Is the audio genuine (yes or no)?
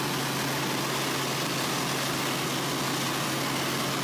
yes